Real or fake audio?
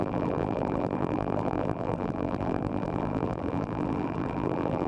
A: fake